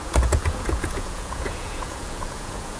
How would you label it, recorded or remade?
remade